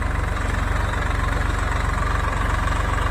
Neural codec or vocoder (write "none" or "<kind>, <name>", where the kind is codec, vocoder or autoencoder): none